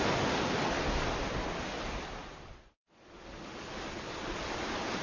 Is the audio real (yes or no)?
yes